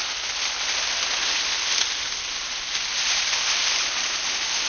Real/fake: real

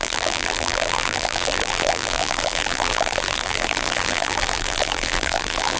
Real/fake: fake